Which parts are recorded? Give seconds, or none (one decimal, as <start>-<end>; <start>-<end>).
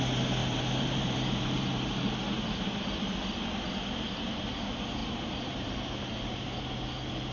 0.0-0.4; 2.1-5.0; 6.6-7.3